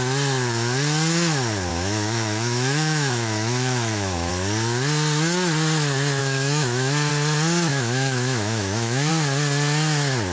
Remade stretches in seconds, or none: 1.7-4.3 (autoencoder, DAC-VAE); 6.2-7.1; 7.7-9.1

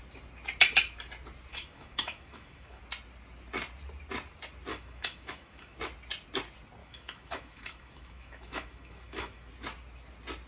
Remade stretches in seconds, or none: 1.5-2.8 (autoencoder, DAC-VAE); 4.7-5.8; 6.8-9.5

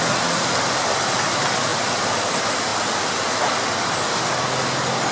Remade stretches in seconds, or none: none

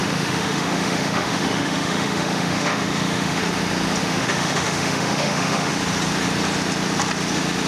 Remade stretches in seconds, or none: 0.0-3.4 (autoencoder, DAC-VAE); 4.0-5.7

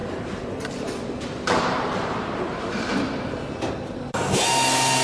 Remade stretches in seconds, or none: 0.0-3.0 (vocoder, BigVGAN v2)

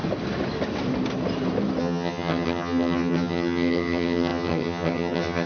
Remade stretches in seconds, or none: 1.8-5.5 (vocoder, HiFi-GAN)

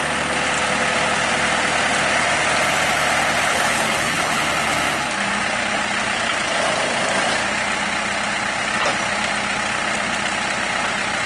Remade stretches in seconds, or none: 3.5-4.4 (codec, HILCodec)